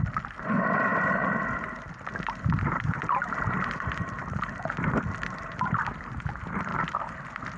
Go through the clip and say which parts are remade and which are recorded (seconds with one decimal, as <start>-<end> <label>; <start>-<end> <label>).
0.0-6.7 remade; 6.7-7.6 recorded